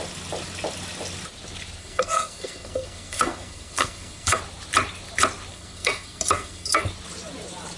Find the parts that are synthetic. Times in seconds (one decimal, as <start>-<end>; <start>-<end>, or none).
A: 1.8-4.4; 5.5-6.8